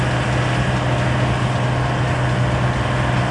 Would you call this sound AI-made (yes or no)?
no